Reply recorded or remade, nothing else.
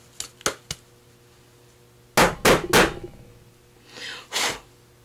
recorded